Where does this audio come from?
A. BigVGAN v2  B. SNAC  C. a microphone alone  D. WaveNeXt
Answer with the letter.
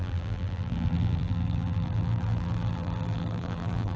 A